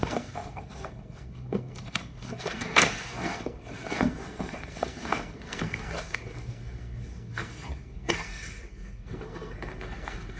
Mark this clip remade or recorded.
remade